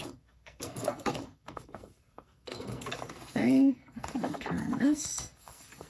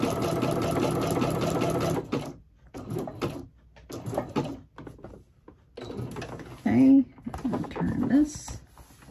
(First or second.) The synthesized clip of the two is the first